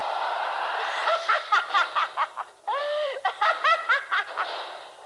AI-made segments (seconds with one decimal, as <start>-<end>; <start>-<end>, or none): 0.0-1.2; 2.8-3.5

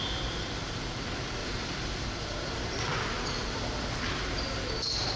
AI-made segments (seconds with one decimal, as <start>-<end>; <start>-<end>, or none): 1.4-4.1

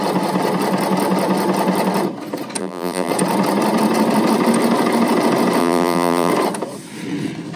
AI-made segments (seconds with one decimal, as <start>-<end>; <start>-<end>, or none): 2.6-3.1; 5.6-6.3

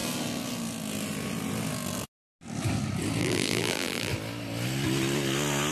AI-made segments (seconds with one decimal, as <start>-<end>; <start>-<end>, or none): 3.2-4.1

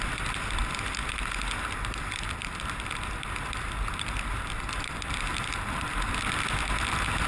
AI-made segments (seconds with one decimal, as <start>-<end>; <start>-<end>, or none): none

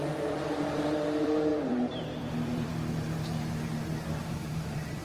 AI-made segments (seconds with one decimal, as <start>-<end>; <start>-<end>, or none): 0.0-2.7; 4.2-5.0

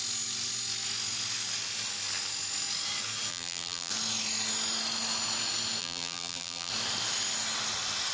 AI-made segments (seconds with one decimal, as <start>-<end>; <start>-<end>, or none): 3.3-3.9; 5.8-6.7

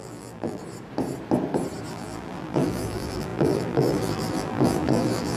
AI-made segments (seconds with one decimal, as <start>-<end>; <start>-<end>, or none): 0.0-0.6; 1.9-5.4